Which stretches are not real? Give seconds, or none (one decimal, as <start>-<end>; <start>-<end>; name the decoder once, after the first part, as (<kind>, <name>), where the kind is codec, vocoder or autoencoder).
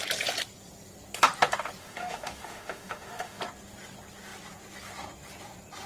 1.8-3.4 (autoencoder, DAC-VAE)